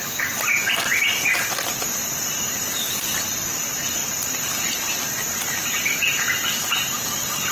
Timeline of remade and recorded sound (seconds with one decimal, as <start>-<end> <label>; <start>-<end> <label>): 0.0-2.0 recorded; 2.0-2.8 remade; 2.8-4.0 recorded; 4.0-4.9 remade; 4.9-7.5 recorded